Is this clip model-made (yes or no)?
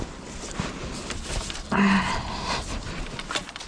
no